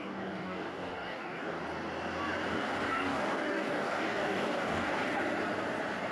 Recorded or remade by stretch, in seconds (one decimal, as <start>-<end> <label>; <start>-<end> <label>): 0.0-1.6 remade; 1.6-2.5 recorded; 2.5-5.0 remade; 5.0-6.1 recorded